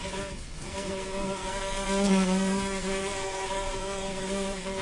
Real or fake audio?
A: fake